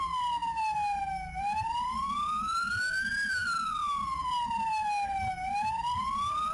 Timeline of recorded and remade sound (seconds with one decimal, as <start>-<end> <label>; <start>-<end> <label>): 0.0-6.5 recorded